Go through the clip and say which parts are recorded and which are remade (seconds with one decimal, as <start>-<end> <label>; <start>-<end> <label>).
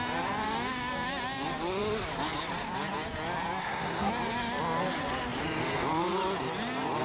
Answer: 0.0-3.6 recorded; 3.6-4.1 remade; 4.1-7.0 recorded